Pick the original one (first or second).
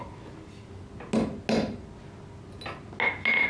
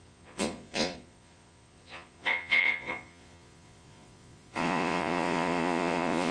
first